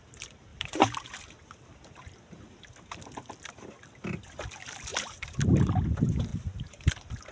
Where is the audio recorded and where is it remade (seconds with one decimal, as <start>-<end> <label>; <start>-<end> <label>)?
0.0-0.5 recorded; 0.5-1.1 remade; 1.1-4.9 recorded; 4.9-5.7 remade; 5.7-6.3 recorded; 6.3-6.8 remade; 6.8-7.3 recorded